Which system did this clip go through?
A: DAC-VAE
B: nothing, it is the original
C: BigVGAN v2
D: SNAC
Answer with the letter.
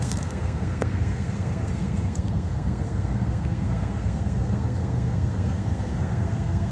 D